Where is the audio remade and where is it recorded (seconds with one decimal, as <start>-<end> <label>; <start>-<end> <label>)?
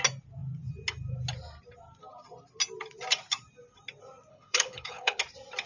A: 0.0-4.3 recorded; 4.3-5.2 remade; 5.2-5.7 recorded